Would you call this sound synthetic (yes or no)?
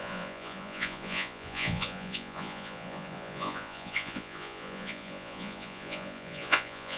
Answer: yes